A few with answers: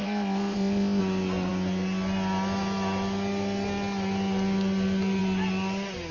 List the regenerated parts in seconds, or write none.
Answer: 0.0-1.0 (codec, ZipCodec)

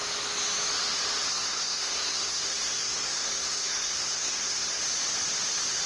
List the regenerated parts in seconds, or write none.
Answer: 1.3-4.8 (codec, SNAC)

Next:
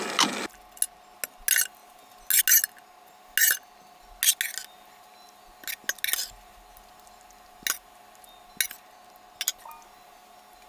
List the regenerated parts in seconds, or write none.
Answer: none